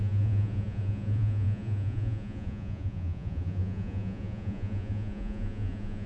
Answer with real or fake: fake